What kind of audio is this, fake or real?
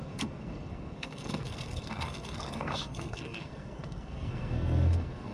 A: fake